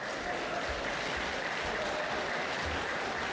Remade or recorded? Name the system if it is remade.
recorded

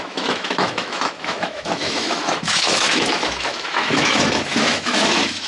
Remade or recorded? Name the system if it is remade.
remade, autoencoder, DAC-VAE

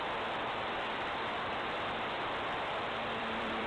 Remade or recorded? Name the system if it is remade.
remade, vocoder, BigVGAN v2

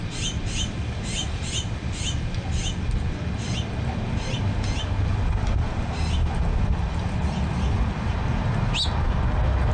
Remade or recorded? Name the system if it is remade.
recorded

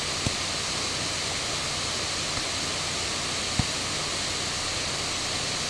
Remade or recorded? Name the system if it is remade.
recorded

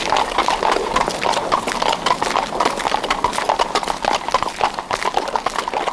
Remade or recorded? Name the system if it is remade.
recorded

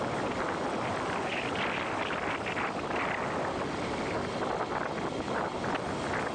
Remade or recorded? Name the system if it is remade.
recorded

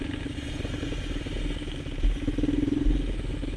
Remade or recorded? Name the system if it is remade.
recorded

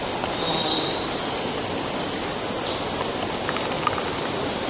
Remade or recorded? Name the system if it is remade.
recorded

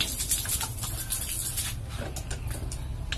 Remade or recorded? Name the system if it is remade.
recorded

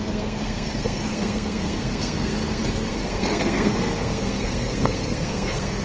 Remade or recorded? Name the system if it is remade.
remade, codec, SNAC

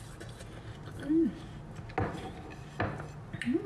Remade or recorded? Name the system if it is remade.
recorded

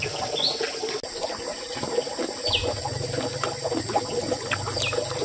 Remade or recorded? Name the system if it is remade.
recorded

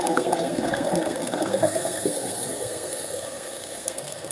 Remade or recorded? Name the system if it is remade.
remade, codec, SNAC